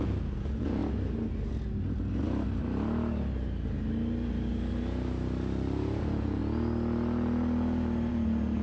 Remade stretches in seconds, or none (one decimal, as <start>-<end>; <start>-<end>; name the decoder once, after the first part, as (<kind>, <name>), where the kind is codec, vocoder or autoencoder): 0.0-0.8 (vocoder, Vocos); 6.0-6.4; 8.1-8.6